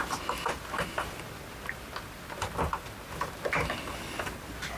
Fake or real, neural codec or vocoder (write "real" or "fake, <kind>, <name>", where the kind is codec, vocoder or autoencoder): real